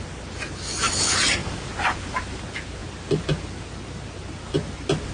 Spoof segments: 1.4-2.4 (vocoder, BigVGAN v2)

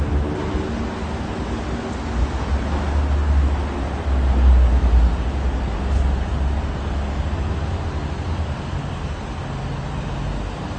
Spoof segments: none

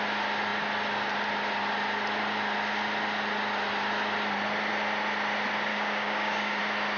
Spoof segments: 5.7-6.6 (codec, DAC)